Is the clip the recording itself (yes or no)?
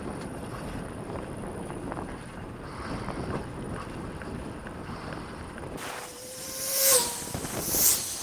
no